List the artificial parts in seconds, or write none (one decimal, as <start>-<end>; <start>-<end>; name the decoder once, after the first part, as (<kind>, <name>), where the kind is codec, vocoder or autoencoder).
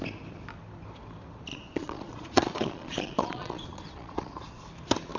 1.5-4.6 (vocoder, Vocos)